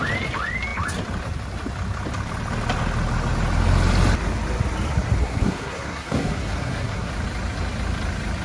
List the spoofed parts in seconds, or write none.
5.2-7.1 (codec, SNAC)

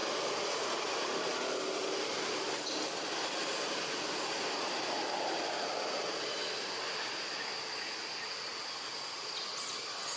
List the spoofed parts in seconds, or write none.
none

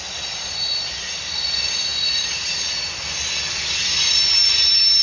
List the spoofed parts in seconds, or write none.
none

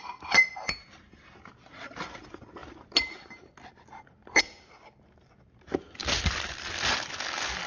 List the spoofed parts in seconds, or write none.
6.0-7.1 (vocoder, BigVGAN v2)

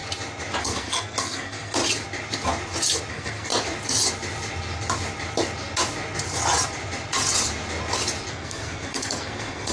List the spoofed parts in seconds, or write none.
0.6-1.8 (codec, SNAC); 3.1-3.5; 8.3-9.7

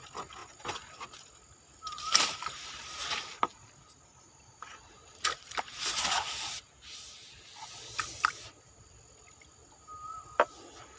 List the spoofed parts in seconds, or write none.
none

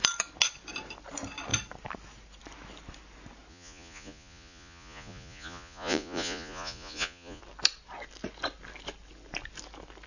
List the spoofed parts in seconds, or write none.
3.5-7.4 (vocoder, Vocos)

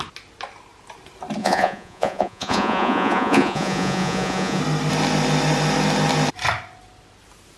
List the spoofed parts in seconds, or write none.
1.4-4.6 (vocoder, Vocos)